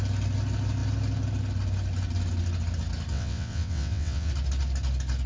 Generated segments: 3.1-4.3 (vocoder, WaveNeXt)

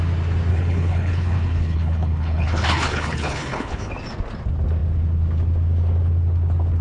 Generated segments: 0.5-3.9 (codec, HILCodec)

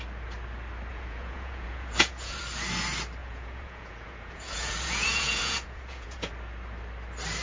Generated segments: 0.9-2.4 (vocoder, Vocos); 3.2-6.3

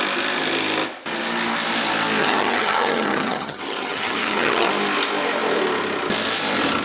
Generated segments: 2.2-4.7 (vocoder, HiFi-GAN)